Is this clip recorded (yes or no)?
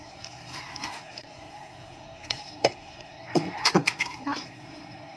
no